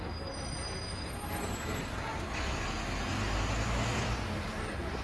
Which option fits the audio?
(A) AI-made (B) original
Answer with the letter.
B